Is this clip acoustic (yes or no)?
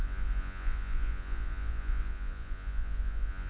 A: no